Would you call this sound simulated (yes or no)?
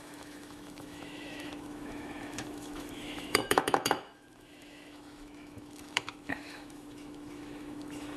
yes